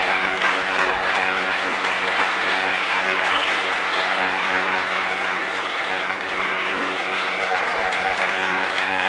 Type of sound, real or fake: fake